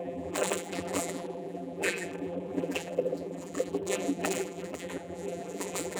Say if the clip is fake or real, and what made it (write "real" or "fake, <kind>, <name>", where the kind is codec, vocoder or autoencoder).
fake, vocoder, BigVGAN v2